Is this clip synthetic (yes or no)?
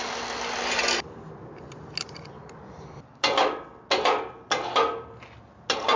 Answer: no